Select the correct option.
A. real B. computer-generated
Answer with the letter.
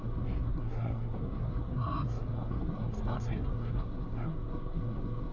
B